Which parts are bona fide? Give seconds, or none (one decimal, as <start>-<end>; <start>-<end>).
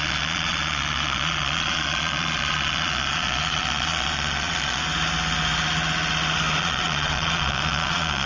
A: 4.8-6.6